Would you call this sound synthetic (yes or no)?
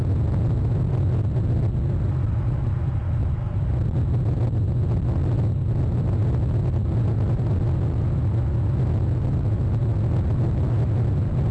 no